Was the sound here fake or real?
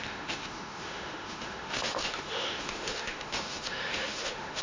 fake